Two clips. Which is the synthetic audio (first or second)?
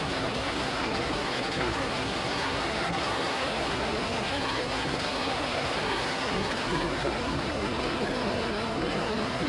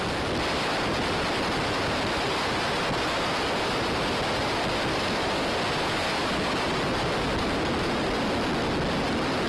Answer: first